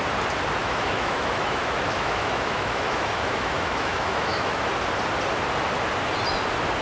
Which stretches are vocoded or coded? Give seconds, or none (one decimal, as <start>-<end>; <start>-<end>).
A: 0.6-4.7